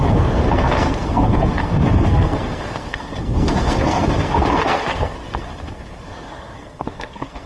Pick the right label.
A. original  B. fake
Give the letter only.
B